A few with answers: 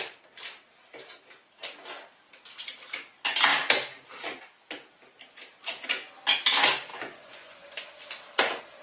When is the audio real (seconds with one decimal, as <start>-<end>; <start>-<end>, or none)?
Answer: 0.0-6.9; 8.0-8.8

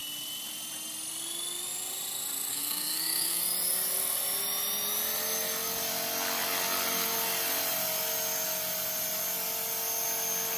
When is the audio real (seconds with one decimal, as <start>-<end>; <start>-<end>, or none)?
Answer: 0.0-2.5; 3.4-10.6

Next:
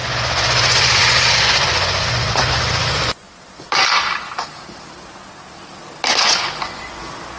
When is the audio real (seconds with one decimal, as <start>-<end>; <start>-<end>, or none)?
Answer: 3.4-6.1; 7.0-7.4

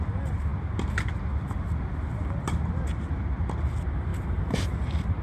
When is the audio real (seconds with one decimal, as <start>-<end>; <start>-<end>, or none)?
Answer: 0.0-4.1; 4.7-5.2

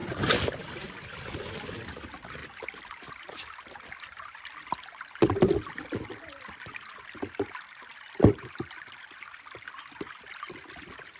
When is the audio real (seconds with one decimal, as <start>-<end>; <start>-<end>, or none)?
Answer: 1.5-11.2

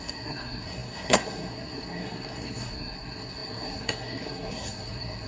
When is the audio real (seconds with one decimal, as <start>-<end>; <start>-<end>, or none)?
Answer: none

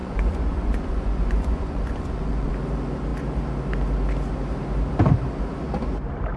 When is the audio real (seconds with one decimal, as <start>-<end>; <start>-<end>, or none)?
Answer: 2.5-6.4